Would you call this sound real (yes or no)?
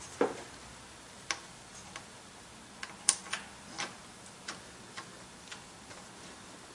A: yes